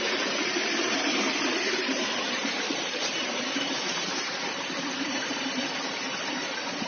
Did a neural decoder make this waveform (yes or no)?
yes